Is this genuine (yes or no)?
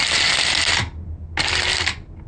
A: yes